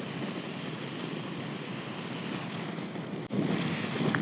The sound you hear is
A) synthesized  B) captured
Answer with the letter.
B